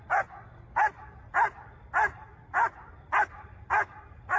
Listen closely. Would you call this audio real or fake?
real